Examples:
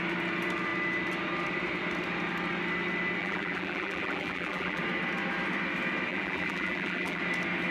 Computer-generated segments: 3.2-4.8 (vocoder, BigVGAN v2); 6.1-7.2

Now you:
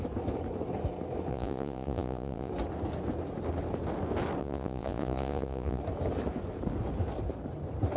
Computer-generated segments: 1.3-2.5 (vocoder, Vocos); 4.4-5.8

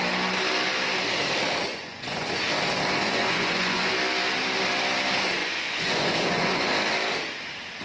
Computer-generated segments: 1.7-2.4 (vocoder, Vocos); 3.0-3.9; 5.4-6.7

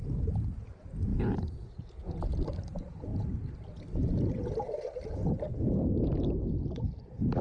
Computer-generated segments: 1.1-2.2 (vocoder, Vocos)

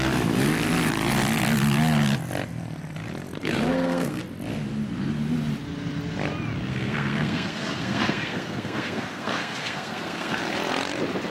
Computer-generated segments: 3.4-4.2 (codec, SNAC); 6.7-10.4

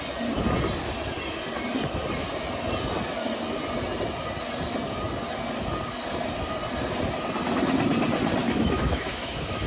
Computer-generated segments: 8.4-9.7 (autoencoder, DAC-VAE)

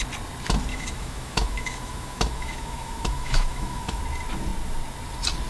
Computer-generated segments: 0.7-4.0 (autoencoder, DAC-VAE)